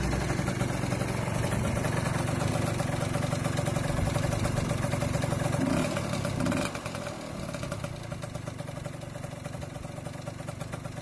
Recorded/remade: recorded